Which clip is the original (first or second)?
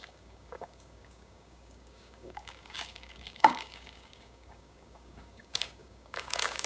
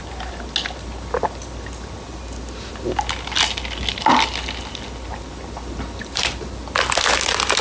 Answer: second